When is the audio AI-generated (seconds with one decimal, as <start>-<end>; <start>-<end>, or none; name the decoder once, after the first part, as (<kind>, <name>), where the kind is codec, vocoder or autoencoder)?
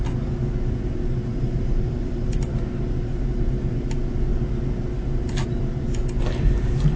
1.3-2.3 (vocoder, BigVGAN v2)